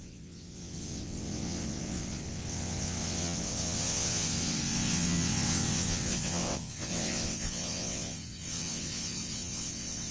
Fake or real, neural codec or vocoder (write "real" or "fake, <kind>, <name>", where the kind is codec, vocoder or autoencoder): fake, vocoder, WaveNeXt